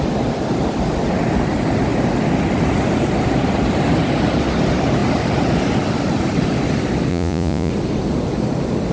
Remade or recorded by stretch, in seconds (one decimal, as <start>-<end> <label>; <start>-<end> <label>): 0.0-7.1 recorded; 7.1-7.7 remade; 7.7-8.9 recorded